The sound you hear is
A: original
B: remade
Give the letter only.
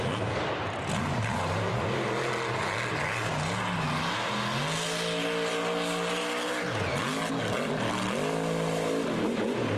A